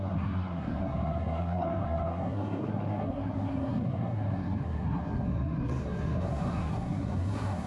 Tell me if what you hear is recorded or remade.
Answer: remade